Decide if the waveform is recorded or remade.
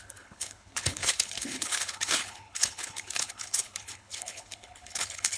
remade